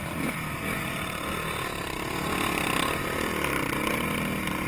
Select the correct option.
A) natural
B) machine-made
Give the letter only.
A